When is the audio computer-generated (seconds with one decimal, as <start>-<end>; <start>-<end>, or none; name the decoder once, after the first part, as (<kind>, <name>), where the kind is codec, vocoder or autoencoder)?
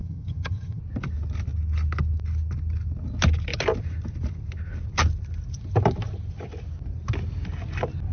0.0-0.8 (vocoder, HiFi-GAN)